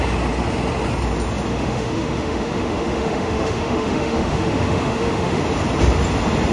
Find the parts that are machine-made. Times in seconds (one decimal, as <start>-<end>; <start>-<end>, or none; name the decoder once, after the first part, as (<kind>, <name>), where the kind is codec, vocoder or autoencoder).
1.5-5.4 (autoencoder, DAC-VAE)